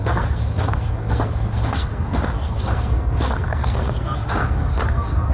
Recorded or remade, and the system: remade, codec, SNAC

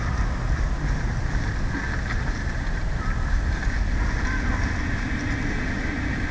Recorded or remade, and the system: recorded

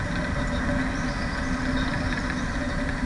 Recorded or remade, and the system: recorded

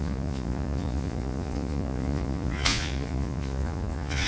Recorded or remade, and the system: remade, vocoder, Vocos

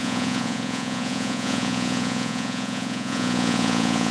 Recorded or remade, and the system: remade, vocoder, Vocos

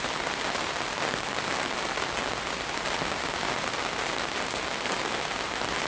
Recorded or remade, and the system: recorded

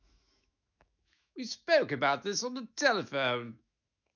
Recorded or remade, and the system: remade, autoencoder, DAC-VAE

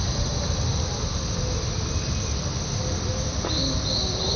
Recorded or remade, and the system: recorded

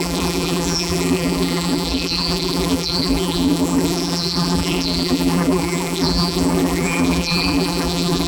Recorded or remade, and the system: remade, vocoder, BigVGAN v2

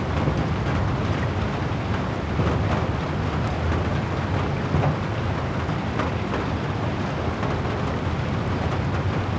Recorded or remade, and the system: recorded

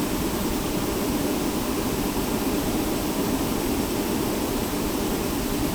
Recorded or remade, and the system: recorded